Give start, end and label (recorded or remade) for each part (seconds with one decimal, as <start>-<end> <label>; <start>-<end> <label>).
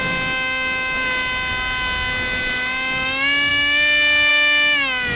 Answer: 0.0-5.2 recorded